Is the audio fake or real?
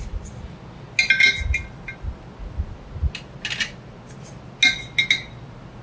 real